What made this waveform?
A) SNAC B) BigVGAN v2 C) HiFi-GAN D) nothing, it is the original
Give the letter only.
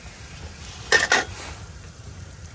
D